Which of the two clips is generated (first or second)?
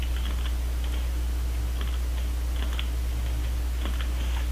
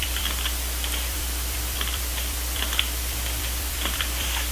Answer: second